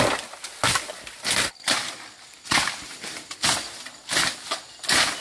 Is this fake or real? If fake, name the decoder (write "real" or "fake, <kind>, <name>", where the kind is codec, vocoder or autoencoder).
real